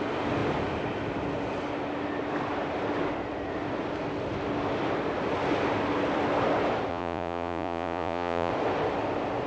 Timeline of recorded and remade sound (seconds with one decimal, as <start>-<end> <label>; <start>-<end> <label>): 0.0-6.9 recorded; 6.9-8.5 remade; 8.5-9.5 recorded